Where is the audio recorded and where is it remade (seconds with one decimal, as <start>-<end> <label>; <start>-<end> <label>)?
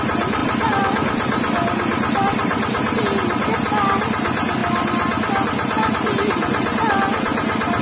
0.0-0.4 recorded; 0.4-3.0 remade; 3.0-7.8 recorded